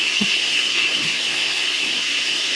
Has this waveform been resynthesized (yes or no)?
yes